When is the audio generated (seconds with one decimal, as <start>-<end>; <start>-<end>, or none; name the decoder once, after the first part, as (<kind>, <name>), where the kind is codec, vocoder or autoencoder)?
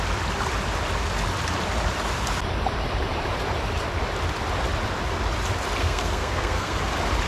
5.8-6.8 (codec, SNAC)